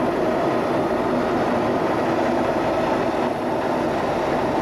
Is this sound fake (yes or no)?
no